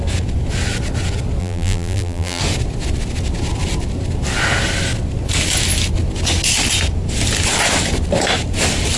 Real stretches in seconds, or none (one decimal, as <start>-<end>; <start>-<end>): 0.0-1.4; 2.4-9.0